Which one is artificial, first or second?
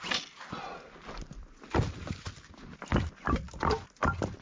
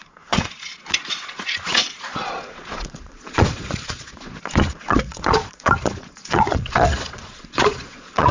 second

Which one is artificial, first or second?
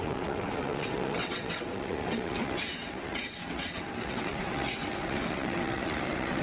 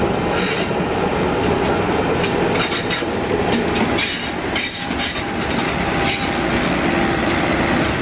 first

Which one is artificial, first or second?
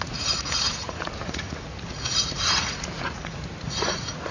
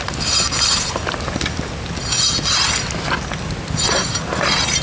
first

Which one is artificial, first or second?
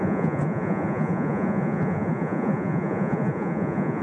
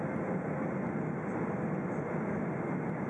first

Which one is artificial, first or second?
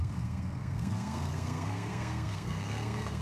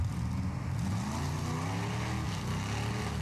first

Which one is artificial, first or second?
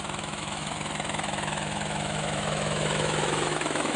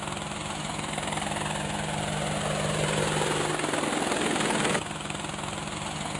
first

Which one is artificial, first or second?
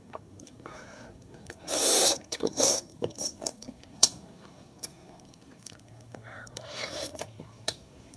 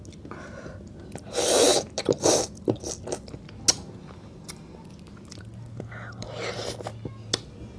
first